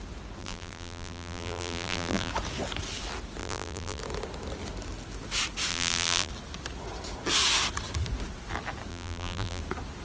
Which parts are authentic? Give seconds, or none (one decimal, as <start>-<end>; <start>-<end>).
0.0-0.4; 2.3-3.4; 4.0-5.7; 6.3-8.9; 9.6-10.0